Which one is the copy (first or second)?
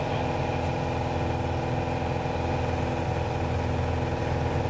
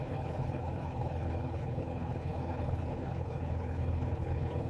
second